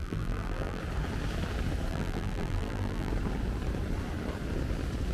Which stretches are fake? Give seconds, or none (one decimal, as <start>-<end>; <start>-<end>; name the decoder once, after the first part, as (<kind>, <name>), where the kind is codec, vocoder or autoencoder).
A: 0.0-0.8 (vocoder, BigVGAN v2); 1.9-3.1